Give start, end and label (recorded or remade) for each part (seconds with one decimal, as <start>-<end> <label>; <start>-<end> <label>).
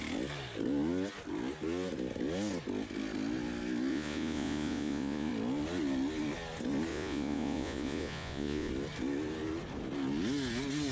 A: 0.0-3.9 recorded; 3.9-5.3 remade; 5.3-6.9 recorded; 6.9-8.7 remade; 8.7-10.9 recorded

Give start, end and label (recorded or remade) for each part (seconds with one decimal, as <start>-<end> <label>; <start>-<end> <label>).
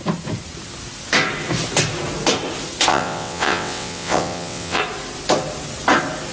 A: 0.0-2.9 recorded; 2.9-4.8 remade; 4.8-6.3 recorded